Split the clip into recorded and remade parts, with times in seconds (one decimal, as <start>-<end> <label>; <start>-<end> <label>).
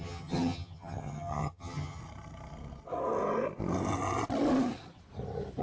0.0-2.0 remade; 2.0-5.6 recorded